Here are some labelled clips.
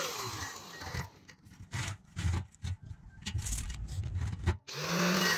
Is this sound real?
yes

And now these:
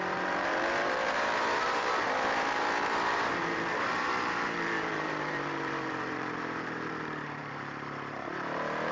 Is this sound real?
no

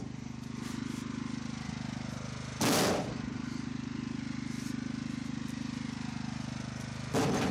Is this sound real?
yes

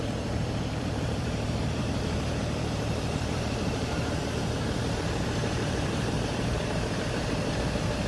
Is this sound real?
no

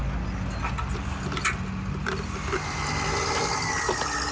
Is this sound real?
yes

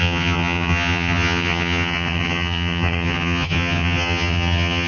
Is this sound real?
no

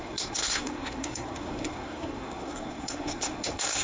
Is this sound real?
no